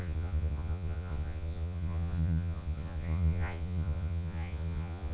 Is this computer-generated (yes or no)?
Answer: yes